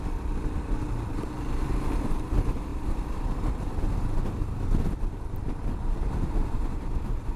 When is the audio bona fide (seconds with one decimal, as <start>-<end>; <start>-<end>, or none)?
0.0-2.7

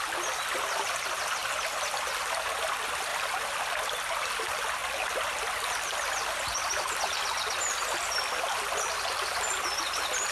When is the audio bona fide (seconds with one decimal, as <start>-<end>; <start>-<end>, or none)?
0.0-10.3

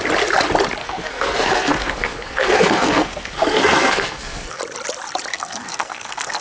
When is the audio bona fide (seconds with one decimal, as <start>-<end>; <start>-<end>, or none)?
0.0-0.8; 4.6-5.3

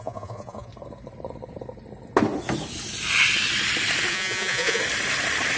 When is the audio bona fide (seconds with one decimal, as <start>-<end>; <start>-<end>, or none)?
0.7-4.1; 4.8-5.6

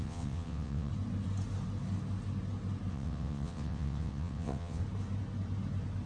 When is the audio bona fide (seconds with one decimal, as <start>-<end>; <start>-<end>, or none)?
0.9-2.9; 4.8-6.1